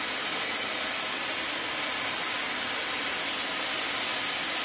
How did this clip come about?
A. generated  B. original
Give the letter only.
B